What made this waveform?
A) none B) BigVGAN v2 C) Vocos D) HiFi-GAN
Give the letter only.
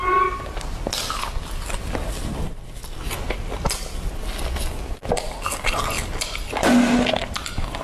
A